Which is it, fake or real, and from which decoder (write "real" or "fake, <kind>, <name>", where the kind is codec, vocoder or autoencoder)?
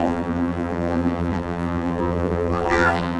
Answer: fake, vocoder, BigVGAN v2